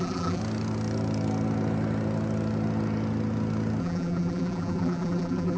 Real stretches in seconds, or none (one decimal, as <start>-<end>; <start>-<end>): 0.4-3.8

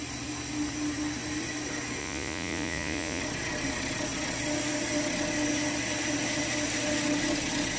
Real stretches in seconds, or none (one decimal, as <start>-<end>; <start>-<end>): 0.0-2.0; 3.2-7.8

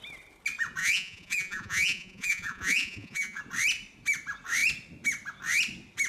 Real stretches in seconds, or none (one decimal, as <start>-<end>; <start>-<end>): 0.0-0.8; 3.4-6.1

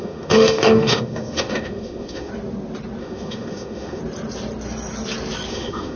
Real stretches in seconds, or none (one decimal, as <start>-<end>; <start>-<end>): 2.3-3.0; 4.0-5.5

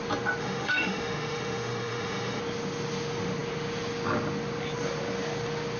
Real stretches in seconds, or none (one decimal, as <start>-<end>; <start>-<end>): 0.0-0.4; 2.4-5.8